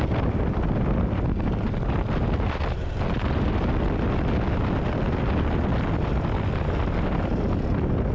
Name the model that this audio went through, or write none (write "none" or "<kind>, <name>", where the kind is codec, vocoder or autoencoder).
none